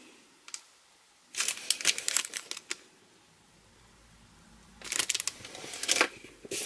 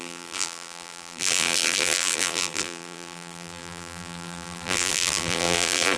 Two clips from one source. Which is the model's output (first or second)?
second